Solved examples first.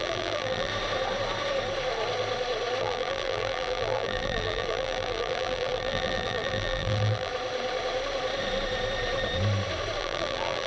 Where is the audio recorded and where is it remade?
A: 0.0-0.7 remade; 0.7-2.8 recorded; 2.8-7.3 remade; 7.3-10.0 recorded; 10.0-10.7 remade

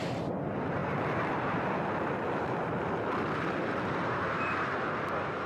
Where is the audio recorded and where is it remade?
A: 0.0-5.5 remade

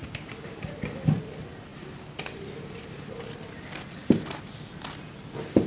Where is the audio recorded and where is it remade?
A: 0.0-0.7 remade; 0.7-1.7 recorded; 1.7-5.1 remade; 5.1-5.7 recorded